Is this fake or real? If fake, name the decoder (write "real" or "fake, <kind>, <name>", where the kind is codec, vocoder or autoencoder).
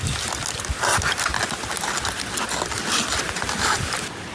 real